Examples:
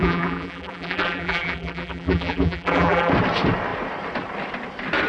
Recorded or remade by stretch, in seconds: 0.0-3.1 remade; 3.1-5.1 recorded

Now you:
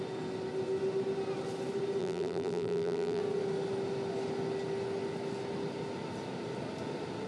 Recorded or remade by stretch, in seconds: 0.0-2.0 recorded; 2.0-3.2 remade; 3.2-7.3 recorded

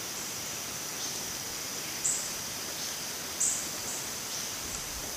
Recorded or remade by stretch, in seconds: 0.0-3.8 recorded; 3.8-5.2 remade

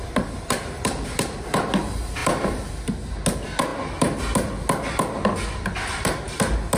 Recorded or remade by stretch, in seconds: 0.0-2.2 recorded; 2.2-2.7 remade; 2.7-6.8 recorded